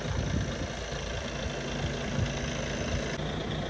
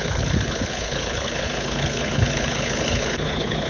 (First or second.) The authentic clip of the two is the first